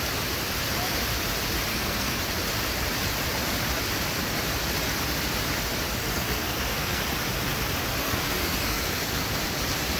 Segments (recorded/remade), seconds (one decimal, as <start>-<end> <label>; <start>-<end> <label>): 0.0-1.7 recorded; 1.7-2.2 remade; 2.2-6.0 recorded; 6.0-7.0 remade; 7.0-8.0 recorded; 8.0-9.2 remade; 9.2-10.0 recorded